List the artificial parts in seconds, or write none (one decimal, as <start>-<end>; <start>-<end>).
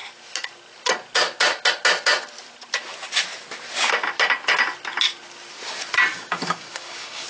6.1-7.3